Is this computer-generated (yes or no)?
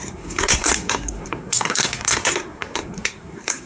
yes